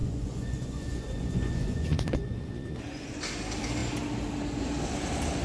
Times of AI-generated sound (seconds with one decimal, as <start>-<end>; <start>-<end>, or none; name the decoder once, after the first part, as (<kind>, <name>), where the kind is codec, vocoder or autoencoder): 0.0-3.2 (vocoder, Vocos)